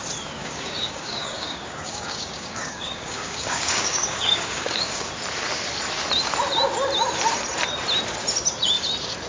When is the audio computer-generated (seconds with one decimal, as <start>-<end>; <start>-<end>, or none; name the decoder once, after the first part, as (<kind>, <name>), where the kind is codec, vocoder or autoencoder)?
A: 0.4-5.1 (codec, DAC)